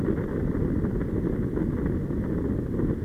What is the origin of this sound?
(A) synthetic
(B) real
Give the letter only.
B